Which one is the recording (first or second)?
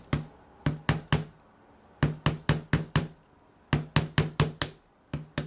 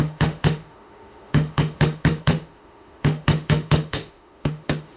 first